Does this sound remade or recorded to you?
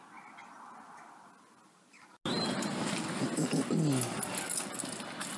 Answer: recorded